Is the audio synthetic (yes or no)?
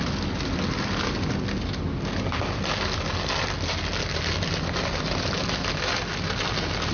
no